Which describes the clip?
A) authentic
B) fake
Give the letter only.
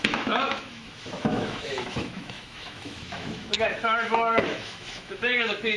B